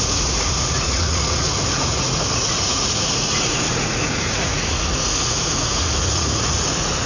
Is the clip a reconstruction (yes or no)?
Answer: yes